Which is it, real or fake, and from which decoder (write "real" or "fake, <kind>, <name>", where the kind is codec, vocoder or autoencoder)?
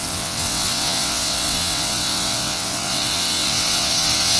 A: fake, vocoder, WaveNeXt